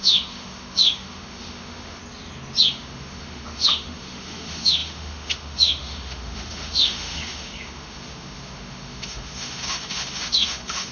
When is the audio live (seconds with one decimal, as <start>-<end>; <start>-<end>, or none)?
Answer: 2.0-2.7